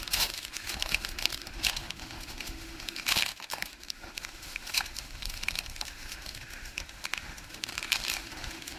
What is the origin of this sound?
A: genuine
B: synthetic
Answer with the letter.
B